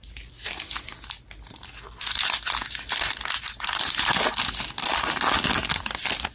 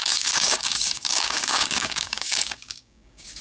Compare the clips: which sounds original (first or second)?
first